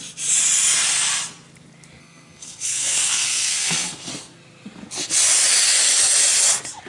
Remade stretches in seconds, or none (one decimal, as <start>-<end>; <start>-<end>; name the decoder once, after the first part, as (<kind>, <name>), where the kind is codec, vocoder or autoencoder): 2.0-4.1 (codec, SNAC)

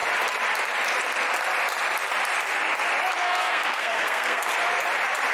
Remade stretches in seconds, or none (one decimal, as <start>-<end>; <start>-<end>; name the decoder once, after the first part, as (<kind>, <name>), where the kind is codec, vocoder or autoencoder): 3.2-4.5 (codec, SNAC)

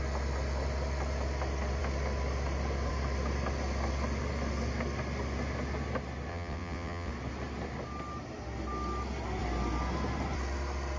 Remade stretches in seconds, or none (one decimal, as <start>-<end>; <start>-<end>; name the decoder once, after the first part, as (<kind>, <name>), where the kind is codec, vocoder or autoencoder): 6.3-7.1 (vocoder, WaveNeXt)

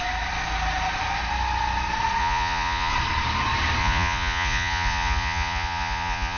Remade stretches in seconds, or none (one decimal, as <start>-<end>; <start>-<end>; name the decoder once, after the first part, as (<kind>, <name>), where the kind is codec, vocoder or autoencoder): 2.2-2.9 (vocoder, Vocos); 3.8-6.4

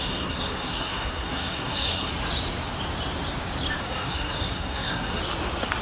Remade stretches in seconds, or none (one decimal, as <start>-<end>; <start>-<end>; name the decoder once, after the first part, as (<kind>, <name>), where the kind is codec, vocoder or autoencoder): 0.0-2.1 (codec, SNAC); 3.8-5.2

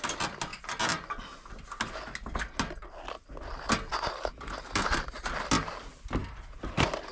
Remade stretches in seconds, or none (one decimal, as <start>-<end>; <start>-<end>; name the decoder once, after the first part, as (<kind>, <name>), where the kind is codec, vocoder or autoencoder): none